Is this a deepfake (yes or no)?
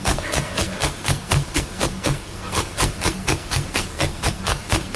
yes